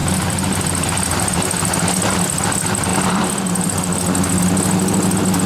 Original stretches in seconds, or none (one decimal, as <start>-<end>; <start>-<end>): 0.0-5.5